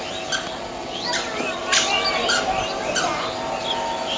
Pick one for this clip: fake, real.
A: real